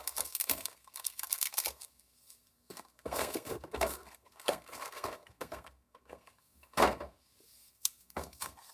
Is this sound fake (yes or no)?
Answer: yes